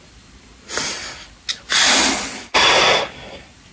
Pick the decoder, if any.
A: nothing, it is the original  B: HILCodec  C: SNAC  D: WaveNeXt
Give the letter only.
A